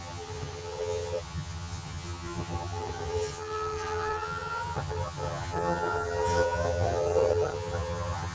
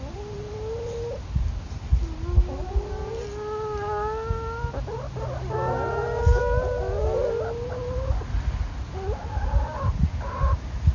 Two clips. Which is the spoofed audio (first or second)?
first